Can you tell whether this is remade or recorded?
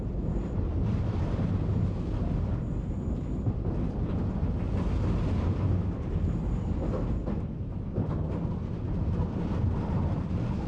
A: recorded